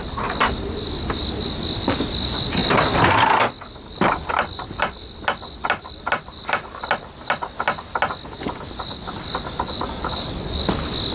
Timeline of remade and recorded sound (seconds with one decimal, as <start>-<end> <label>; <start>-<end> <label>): 0.0-11.1 recorded